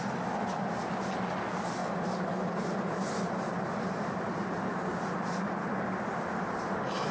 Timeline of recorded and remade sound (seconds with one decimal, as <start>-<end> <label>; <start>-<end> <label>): 0.0-1.8 recorded; 1.8-5.7 remade; 5.7-7.1 recorded